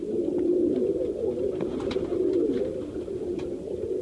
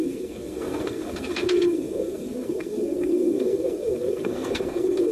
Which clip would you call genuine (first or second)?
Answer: first